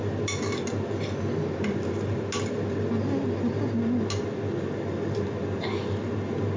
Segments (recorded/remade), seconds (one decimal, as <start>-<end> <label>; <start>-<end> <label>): 0.0-6.6 recorded